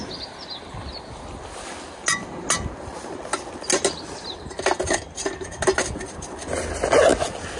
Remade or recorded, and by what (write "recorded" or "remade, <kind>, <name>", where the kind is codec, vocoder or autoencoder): recorded